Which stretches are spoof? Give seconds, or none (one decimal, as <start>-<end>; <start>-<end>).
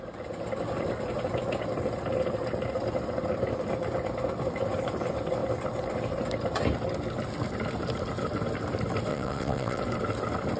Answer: 9.1-9.8